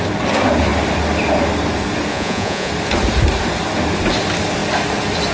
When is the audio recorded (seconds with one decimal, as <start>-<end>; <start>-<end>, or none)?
0.0-2.1; 2.7-5.3